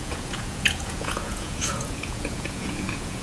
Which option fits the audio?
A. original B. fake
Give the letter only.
B